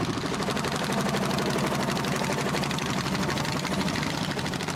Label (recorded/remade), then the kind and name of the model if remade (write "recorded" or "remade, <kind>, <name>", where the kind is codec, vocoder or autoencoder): recorded